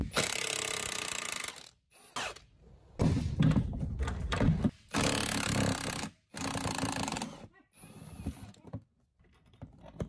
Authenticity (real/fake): real